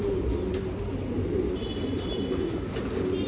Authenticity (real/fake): real